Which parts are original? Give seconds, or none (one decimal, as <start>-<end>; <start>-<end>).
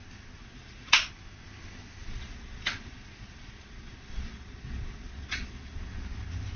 0.0-0.4; 1.1-2.0; 5.8-6.6